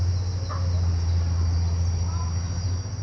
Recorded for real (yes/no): yes